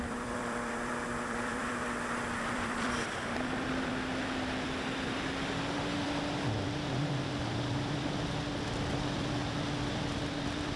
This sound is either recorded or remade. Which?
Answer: remade